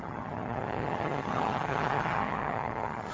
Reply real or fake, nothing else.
fake